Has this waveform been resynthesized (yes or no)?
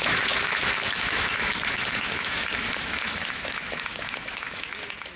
yes